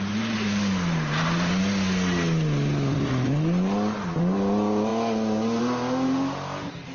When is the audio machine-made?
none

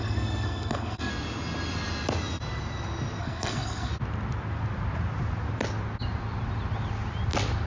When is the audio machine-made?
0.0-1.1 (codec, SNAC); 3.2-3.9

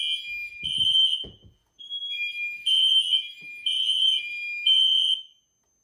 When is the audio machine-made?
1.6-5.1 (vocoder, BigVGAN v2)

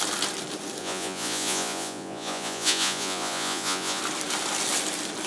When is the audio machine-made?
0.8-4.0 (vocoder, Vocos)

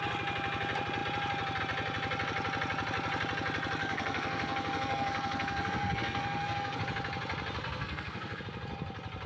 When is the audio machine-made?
3.8-6.8 (codec, SNAC); 7.6-8.4

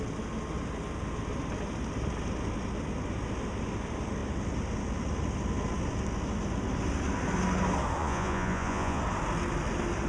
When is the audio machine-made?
8.0-9.0 (vocoder, Vocos)